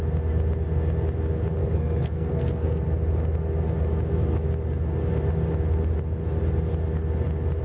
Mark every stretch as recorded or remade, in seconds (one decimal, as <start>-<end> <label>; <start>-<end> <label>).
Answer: 0.0-1.6 recorded; 1.6-2.8 remade; 2.8-7.6 recorded